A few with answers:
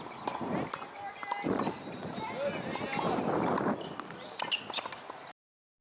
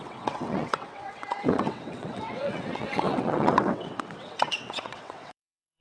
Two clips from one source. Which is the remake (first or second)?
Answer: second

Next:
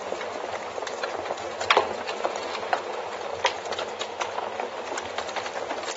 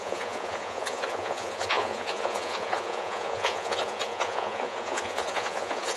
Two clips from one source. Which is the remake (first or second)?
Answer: second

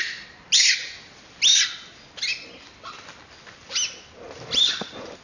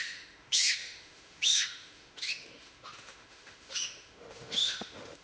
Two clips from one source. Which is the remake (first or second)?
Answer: second